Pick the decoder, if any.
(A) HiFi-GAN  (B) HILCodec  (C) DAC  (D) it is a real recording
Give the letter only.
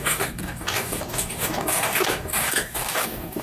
C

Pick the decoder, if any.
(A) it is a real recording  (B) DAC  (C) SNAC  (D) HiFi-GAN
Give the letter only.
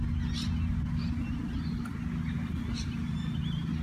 A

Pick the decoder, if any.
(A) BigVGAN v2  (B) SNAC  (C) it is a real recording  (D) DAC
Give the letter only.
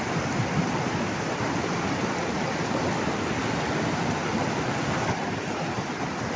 C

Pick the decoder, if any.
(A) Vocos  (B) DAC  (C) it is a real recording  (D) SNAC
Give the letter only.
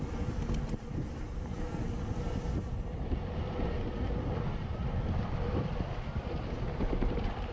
C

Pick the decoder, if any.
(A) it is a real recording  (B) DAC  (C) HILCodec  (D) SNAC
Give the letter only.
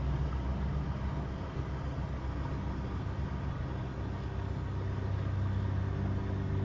A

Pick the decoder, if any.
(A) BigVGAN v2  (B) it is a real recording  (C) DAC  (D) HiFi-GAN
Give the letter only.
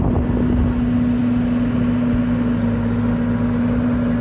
B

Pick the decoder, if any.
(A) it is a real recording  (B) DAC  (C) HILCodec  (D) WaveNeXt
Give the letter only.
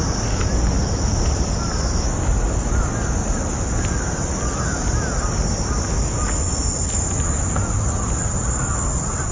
A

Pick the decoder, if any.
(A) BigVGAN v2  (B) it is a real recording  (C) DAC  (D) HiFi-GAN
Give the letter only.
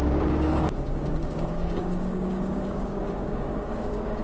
C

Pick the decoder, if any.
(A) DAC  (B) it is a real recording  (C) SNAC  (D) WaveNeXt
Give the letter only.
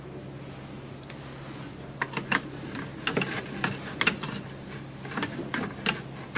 B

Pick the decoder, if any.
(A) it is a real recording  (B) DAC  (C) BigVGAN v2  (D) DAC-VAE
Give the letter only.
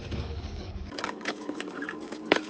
B